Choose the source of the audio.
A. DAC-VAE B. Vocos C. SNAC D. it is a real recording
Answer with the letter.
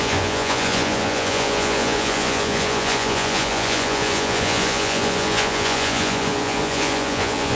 B